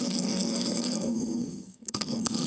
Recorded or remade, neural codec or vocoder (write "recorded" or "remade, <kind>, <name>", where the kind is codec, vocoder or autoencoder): remade, codec, SNAC